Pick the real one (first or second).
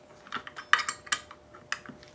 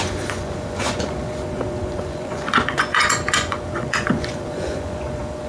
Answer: first